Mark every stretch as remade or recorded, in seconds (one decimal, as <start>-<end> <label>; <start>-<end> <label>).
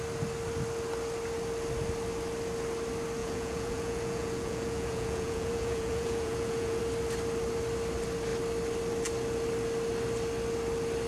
0.0-3.2 recorded; 3.2-6.8 remade; 6.8-11.1 recorded